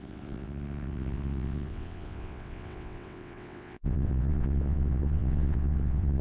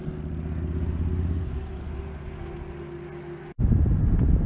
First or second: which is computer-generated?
first